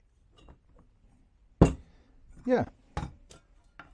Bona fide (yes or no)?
yes